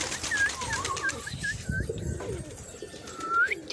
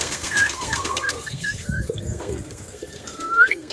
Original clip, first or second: first